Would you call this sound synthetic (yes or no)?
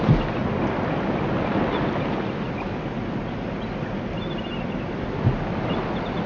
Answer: no